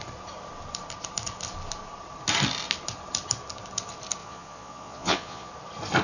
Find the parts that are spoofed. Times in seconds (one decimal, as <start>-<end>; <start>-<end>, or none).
4.2-5.5